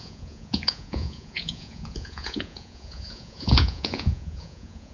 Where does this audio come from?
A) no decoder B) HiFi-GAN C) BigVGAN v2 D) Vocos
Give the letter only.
D